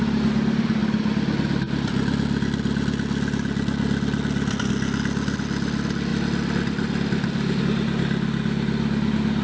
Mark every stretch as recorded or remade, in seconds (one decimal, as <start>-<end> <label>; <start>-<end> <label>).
0.0-9.4 recorded